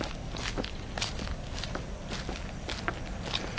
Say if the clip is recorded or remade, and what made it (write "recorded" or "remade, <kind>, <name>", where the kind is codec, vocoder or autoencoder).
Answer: recorded